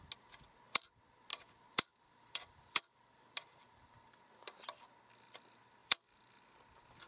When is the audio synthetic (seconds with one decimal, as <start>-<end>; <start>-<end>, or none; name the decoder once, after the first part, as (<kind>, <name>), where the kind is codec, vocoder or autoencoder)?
1.3-4.3 (vocoder, BigVGAN v2); 5.8-6.3